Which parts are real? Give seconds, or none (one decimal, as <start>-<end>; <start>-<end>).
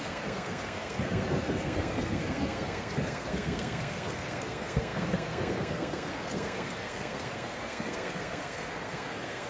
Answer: none